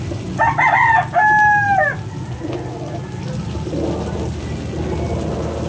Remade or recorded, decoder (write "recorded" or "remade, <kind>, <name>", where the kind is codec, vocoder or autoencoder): recorded